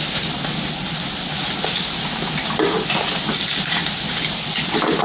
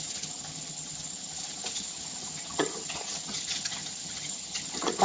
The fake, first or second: second